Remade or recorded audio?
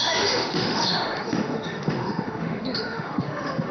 remade